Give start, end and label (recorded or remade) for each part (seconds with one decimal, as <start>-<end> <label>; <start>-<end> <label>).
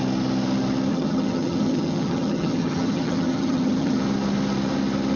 0.0-0.9 recorded; 0.9-4.0 remade; 4.0-5.2 recorded